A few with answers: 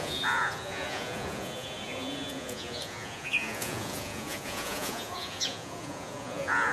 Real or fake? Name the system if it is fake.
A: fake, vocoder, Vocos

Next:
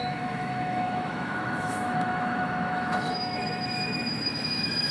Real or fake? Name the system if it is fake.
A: fake, autoencoder, DAC-VAE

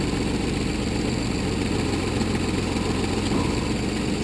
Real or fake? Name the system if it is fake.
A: real